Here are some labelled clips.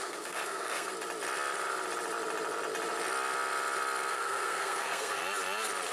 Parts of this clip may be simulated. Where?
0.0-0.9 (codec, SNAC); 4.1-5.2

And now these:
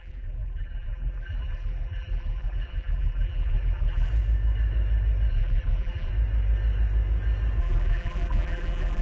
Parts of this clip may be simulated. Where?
0.0-4.1 (vocoder, BigVGAN v2); 5.3-6.1; 7.6-9.0

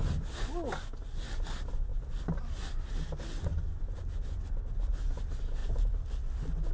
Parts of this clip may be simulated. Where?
none

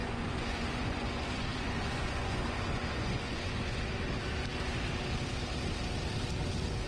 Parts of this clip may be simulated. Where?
0.0-3.9 (vocoder, Vocos)